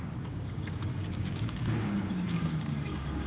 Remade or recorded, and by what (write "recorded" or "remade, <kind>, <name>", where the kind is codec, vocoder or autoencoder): remade, codec, DAC